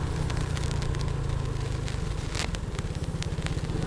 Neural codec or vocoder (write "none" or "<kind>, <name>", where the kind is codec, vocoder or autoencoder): none